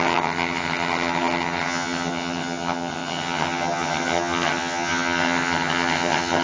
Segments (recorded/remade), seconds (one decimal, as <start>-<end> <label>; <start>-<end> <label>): 0.0-6.4 remade